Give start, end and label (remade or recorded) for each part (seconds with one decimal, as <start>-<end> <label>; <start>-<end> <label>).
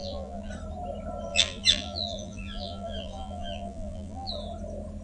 0.0-0.5 remade; 0.5-1.3 recorded; 1.3-4.3 remade; 4.3-5.0 recorded